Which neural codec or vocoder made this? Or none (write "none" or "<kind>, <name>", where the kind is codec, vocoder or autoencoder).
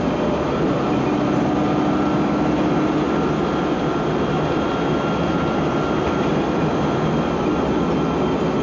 none